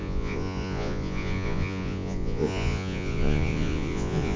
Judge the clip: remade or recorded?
remade